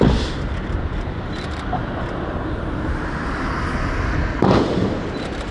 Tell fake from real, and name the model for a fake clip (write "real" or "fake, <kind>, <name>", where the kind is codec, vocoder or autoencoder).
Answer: real